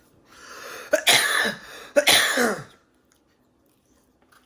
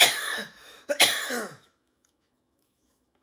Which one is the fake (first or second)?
second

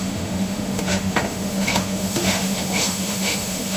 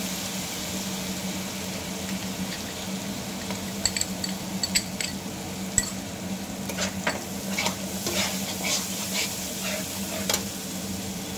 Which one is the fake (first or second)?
first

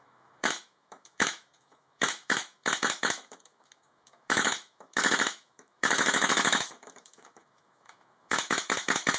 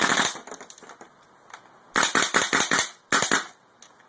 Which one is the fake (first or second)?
first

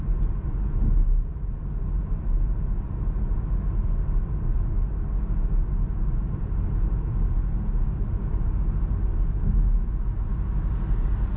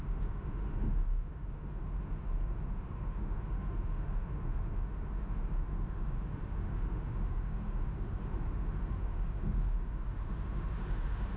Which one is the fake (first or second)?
second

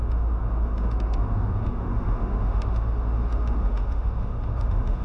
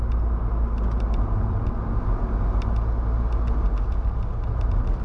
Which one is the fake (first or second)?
first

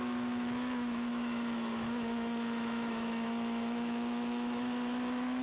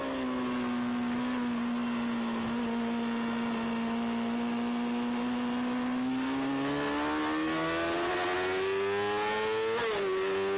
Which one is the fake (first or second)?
first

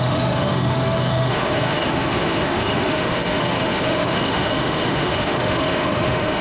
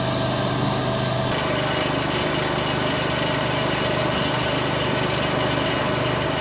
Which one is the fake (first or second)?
first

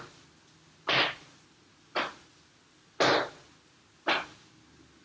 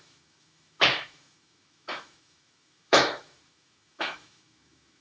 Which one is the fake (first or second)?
second